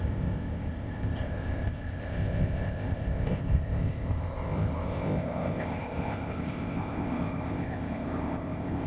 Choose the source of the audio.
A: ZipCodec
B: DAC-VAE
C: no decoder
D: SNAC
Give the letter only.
A